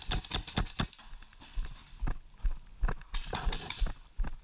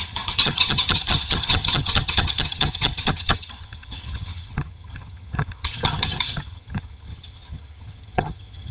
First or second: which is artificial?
second